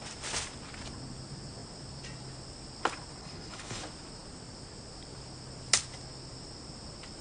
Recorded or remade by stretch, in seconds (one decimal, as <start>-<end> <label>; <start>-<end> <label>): 0.0-3.2 recorded; 3.2-3.8 remade; 3.8-7.2 recorded